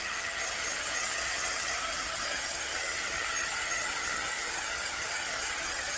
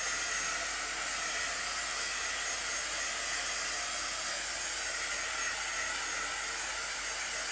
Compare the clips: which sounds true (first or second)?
second